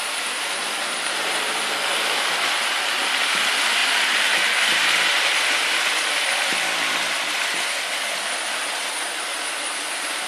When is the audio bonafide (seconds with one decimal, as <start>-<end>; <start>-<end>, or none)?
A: none